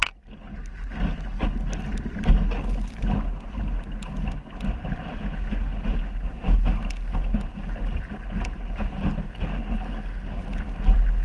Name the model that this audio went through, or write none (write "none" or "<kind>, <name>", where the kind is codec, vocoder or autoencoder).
none